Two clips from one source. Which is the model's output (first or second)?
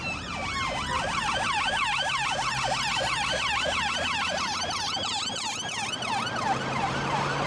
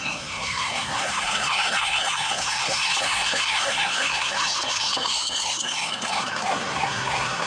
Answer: second